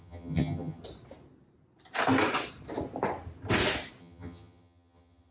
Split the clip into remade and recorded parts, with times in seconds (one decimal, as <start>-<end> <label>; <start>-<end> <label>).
0.0-0.8 remade; 0.8-4.0 recorded; 4.0-5.3 remade